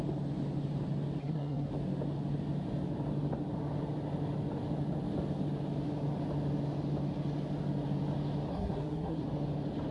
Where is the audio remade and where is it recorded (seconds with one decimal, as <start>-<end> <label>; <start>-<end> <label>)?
0.0-1.2 recorded; 1.2-1.7 remade; 1.7-8.5 recorded; 8.5-9.2 remade; 9.2-9.9 recorded